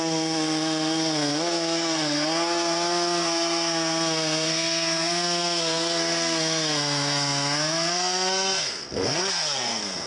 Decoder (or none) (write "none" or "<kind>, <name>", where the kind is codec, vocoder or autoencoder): codec, SNAC